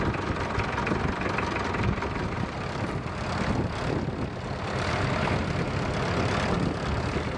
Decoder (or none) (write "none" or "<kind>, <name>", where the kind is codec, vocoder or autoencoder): none